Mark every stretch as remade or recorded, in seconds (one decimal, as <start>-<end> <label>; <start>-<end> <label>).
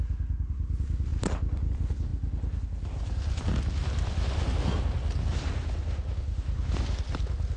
0.0-1.1 recorded; 1.1-1.7 remade; 1.7-2.1 recorded; 2.1-4.5 remade; 4.5-5.3 recorded; 5.3-6.1 remade; 6.1-7.6 recorded